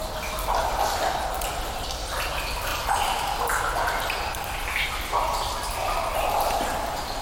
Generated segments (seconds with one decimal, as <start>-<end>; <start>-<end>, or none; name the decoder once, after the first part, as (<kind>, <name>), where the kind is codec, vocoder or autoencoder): none